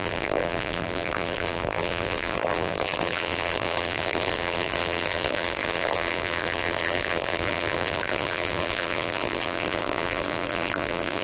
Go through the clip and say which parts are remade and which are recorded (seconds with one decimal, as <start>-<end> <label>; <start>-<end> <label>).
0.0-11.2 remade